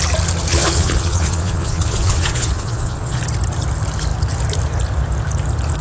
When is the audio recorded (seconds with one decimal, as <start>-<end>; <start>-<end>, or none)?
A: 0.0-0.5; 3.2-5.8